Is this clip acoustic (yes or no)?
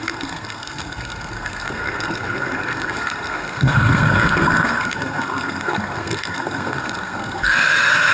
no